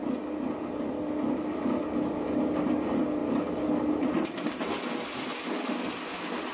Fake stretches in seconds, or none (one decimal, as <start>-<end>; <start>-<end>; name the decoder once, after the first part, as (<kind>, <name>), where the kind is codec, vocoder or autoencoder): none